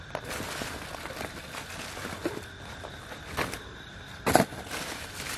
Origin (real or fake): real